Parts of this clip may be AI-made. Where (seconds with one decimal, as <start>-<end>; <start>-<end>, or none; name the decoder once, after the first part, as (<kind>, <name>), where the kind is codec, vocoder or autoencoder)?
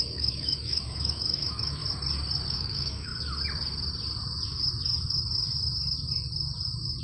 0.0-1.8 (autoencoder, DAC-VAE); 2.5-3.1